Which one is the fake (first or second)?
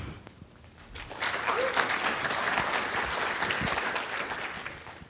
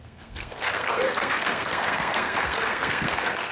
second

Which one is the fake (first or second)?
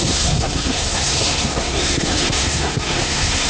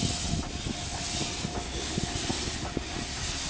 first